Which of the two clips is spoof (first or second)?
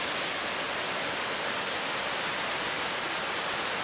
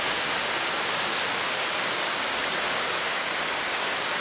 second